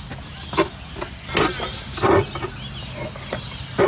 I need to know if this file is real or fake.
real